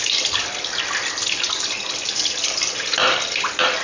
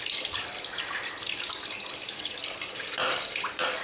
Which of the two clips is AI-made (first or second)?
second